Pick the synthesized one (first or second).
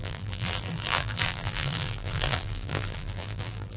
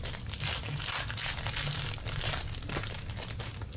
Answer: first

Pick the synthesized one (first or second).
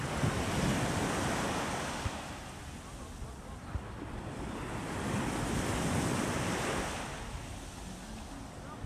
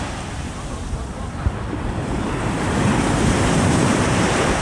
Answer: second